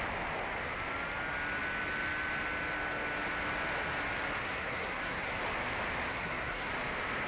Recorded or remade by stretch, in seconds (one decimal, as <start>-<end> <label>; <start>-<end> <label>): 0.0-4.4 recorded; 4.4-5.4 remade; 5.4-6.1 recorded; 6.1-6.7 remade; 6.7-7.3 recorded